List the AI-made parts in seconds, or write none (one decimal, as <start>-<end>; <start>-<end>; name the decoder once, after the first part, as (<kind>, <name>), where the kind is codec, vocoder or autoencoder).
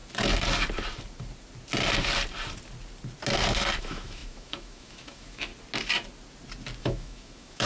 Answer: 3.8-5.5 (autoencoder, DAC-VAE); 6.8-7.7